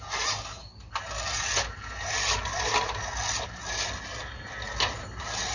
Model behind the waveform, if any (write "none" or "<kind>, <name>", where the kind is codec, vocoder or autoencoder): none